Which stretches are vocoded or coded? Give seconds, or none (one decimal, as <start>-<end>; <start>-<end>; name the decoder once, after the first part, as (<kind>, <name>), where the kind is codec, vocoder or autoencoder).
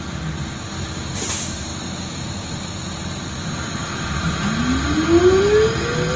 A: none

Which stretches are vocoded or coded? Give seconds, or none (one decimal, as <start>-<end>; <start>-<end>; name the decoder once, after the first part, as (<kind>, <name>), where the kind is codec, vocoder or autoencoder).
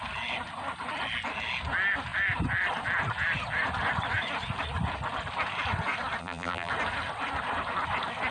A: 6.2-6.7 (vocoder, BigVGAN v2)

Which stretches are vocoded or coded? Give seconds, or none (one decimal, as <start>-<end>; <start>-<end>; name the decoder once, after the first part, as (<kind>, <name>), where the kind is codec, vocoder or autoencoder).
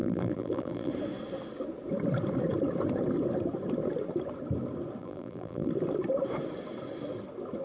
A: 0.0-0.9 (vocoder, BigVGAN v2); 5.0-5.7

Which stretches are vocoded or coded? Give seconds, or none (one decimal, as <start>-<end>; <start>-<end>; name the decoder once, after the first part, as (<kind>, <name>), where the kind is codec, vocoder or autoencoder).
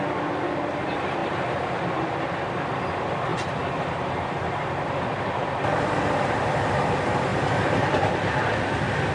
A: 0.0-9.1 (vocoder, BigVGAN v2)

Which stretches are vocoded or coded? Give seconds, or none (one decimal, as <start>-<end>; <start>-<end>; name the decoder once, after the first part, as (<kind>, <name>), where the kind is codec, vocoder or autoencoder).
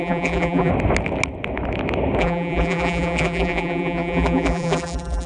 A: 0.0-0.7 (vocoder, BigVGAN v2); 2.2-5.3